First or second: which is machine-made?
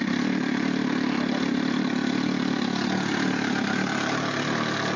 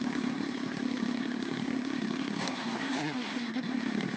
second